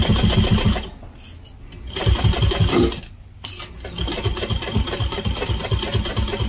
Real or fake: real